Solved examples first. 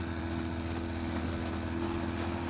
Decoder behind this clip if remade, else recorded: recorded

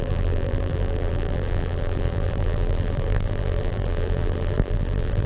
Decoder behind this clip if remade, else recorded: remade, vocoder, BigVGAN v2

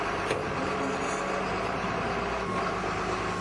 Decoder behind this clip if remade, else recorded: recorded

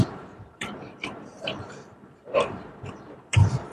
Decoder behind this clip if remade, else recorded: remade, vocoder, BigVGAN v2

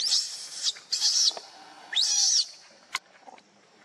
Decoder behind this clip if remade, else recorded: remade, vocoder, BigVGAN v2